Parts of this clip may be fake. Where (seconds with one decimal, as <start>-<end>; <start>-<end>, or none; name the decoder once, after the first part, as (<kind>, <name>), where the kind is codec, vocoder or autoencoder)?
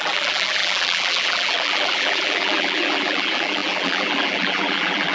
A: 0.0-5.1 (vocoder, BigVGAN v2)